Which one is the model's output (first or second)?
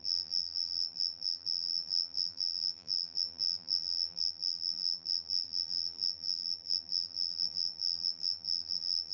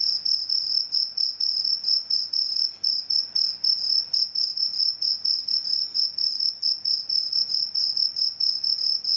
first